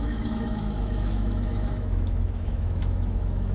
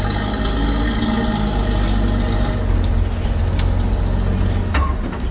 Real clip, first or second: second